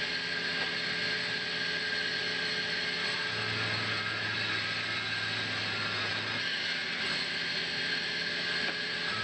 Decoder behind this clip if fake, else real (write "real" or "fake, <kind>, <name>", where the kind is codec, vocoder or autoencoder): real